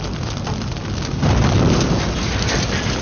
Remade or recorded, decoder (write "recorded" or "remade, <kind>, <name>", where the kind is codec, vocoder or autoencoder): recorded